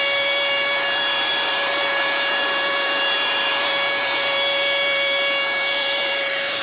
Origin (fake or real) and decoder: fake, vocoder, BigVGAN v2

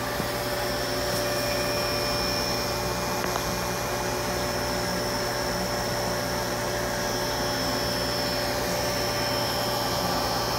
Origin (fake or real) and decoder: real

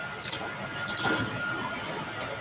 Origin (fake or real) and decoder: real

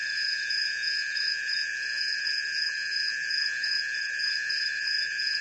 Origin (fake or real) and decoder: fake, vocoder, Vocos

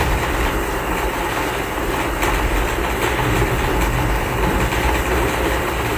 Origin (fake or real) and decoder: real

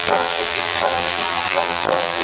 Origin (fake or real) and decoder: fake, vocoder, BigVGAN v2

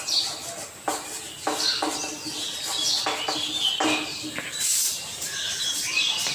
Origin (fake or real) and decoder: real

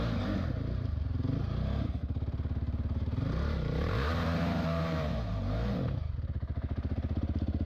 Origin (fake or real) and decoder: fake, vocoder, BigVGAN v2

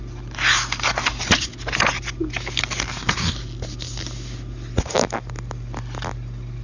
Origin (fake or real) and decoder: real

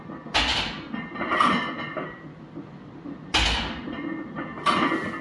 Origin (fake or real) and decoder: real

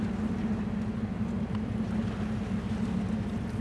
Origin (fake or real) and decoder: real